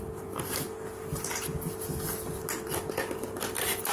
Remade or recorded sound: recorded